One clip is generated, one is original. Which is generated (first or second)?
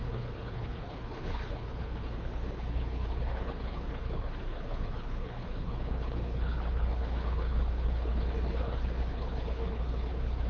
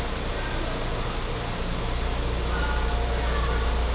first